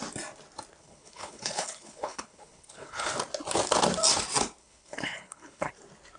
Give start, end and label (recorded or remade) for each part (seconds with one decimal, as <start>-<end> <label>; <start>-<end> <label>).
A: 0.0-0.8 recorded; 0.8-3.1 remade; 3.1-4.6 recorded; 4.6-5.7 remade; 5.7-6.2 recorded